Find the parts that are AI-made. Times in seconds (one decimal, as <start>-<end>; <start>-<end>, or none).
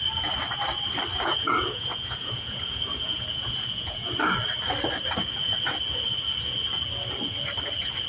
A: 1.1-4.1